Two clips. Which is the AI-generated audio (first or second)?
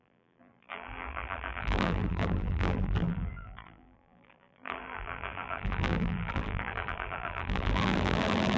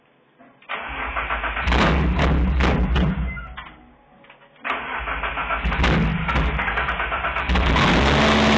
first